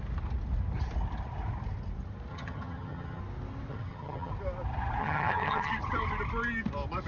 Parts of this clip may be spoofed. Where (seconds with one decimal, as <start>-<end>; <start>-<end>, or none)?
2.3-3.2; 3.7-4.3; 5.0-5.7